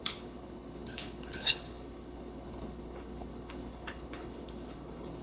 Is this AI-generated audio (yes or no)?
yes